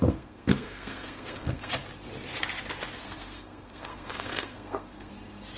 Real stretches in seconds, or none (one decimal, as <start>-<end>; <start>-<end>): 1.7-3.0; 5.1-5.6